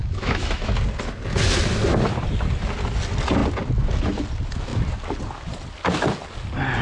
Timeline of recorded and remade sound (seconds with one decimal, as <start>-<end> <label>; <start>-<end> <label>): 0.0-0.7 remade; 0.7-6.8 recorded